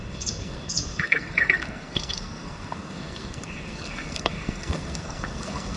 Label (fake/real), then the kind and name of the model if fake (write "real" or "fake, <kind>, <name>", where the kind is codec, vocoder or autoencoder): fake, codec, SNAC